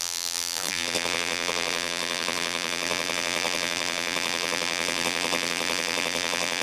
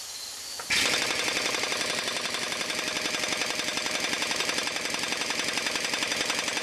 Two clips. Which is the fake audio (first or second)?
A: first